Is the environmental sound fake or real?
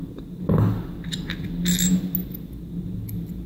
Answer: real